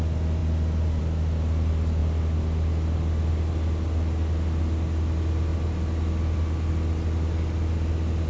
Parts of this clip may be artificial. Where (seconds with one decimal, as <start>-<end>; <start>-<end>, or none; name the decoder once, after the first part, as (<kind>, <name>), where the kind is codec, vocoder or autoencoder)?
none